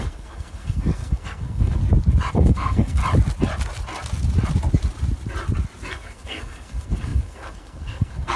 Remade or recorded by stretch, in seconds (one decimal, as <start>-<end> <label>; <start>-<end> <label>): 0.0-1.8 remade; 1.8-2.3 recorded; 2.3-3.0 remade; 3.0-5.9 recorded; 5.9-8.4 remade